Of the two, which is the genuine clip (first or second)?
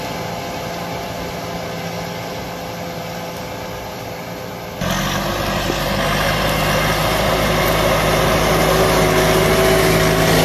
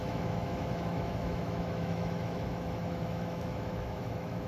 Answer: first